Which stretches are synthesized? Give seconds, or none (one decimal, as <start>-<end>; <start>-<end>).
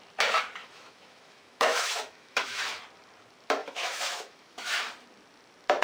0.6-2.8; 3.6-4.9